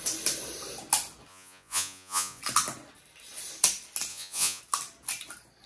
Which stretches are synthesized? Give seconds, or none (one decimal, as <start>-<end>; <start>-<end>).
1.3-2.4; 4.1-4.6